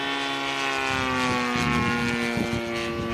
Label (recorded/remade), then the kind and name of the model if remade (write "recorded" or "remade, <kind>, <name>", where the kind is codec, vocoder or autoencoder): recorded